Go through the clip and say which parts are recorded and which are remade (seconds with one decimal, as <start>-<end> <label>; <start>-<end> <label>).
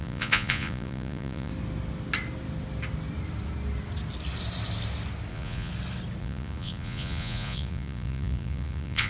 0.0-1.5 remade; 1.5-5.3 recorded; 5.3-5.7 remade; 5.7-6.2 recorded; 6.2-9.1 remade